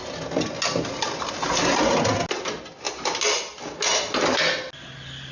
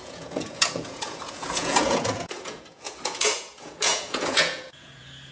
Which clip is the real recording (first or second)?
first